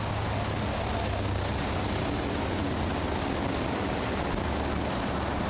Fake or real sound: real